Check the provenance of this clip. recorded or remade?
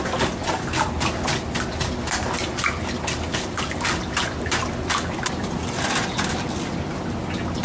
recorded